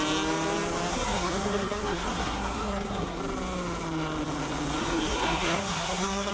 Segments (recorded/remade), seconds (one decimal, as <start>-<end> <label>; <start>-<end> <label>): 0.0-0.9 recorded; 0.9-3.2 remade; 3.2-4.8 recorded; 4.8-6.3 remade